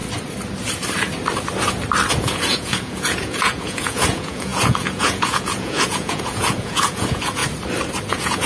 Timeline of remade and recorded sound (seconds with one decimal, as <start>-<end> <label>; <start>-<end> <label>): 0.0-2.1 recorded; 2.1-7.4 remade; 7.4-8.1 recorded; 8.1-8.5 remade